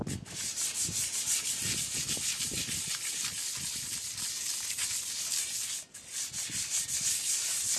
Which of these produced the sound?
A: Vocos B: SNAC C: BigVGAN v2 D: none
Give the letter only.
D